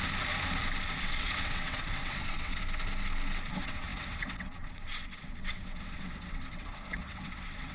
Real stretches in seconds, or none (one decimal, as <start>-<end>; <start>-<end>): 0.0-1.0; 2.6-3.5